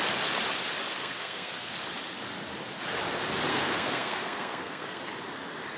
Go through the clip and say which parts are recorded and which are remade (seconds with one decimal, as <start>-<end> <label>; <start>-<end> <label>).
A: 0.0-1.0 recorded; 1.0-1.7 remade; 1.7-3.5 recorded; 3.5-5.0 remade; 5.0-5.8 recorded